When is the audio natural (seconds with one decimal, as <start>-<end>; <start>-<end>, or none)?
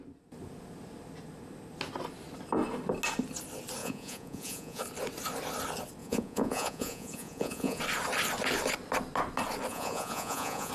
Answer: 0.0-3.8; 4.8-6.0; 7.8-9.7